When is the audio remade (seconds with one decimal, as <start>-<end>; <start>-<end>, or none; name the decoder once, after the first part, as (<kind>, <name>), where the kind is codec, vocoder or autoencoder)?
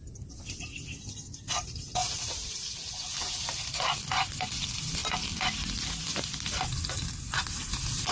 2.0-2.5 (vocoder, BigVGAN v2); 7.4-8.1